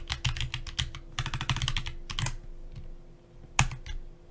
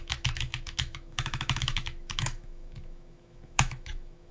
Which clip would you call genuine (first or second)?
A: first